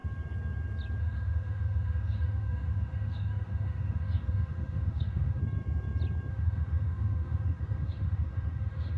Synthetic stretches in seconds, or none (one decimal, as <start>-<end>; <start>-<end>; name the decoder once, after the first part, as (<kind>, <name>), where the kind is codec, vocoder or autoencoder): 1.0-5.4 (autoencoder, DAC-VAE); 6.3-9.0